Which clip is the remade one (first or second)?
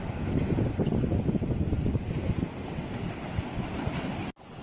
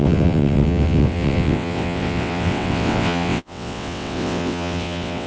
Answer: second